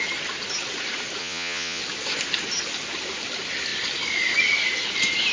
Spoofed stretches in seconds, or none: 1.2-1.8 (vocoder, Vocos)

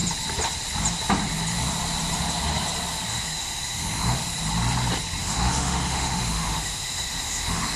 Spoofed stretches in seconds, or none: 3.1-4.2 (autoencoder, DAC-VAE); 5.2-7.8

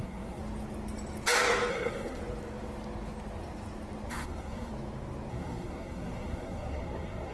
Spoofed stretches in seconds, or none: 0.0-0.4 (codec, SNAC); 1.7-2.2; 4.1-4.7; 5.3-7.3

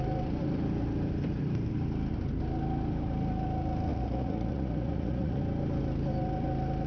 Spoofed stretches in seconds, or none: 3.9-5.4 (vocoder, Vocos)